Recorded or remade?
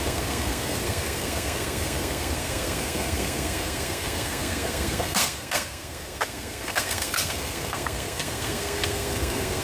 remade